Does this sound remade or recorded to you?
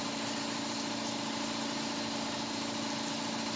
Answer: recorded